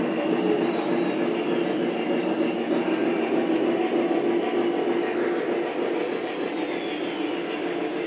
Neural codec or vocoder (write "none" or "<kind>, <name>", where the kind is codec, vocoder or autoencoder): none